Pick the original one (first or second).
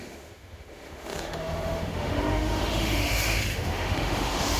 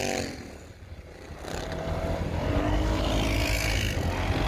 second